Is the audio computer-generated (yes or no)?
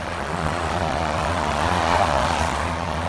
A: yes